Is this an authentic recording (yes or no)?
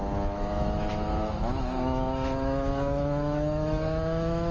no